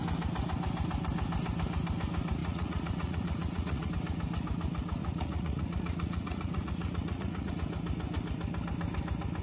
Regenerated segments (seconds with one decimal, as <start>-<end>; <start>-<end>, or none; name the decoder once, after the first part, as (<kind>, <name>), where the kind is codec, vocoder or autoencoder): 2.4-3.9 (vocoder, Vocos); 5.0-7.5